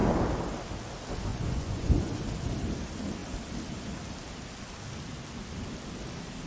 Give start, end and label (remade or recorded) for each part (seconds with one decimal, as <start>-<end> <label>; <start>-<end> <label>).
0.0-1.3 recorded; 1.3-2.1 remade; 2.1-6.5 recorded